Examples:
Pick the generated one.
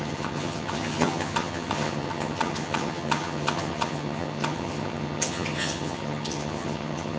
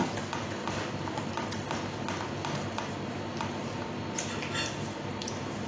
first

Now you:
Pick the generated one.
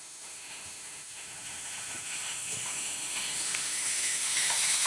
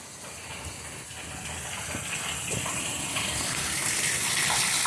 first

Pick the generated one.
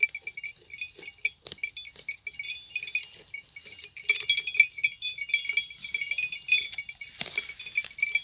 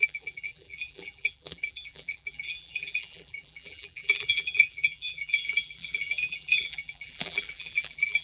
second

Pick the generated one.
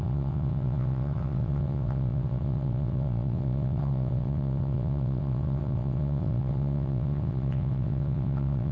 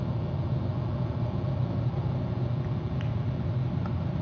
first